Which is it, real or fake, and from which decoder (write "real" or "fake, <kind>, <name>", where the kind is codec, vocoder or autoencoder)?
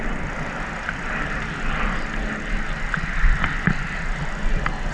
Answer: real